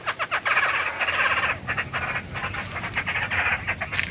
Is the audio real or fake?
real